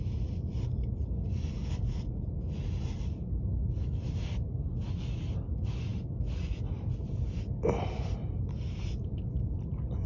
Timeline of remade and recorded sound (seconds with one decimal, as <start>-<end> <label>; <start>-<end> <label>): 0.0-10.1 recorded